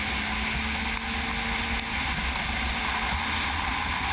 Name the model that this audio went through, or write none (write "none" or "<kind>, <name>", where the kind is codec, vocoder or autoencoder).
none